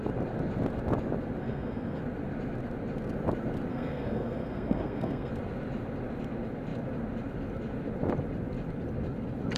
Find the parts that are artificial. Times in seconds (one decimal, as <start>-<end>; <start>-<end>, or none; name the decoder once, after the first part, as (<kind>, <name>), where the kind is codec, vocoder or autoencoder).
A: 1.4-2.0 (codec, SNAC); 3.7-5.3